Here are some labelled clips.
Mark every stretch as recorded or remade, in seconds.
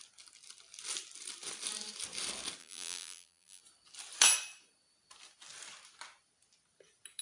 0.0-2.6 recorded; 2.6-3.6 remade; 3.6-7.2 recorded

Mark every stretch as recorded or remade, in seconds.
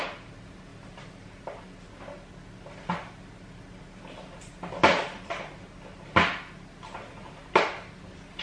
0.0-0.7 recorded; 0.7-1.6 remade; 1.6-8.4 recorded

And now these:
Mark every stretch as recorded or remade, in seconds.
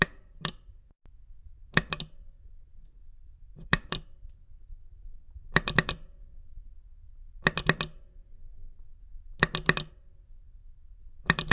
0.0-2.8 recorded; 2.8-6.9 remade; 6.9-9.9 recorded; 9.9-11.5 remade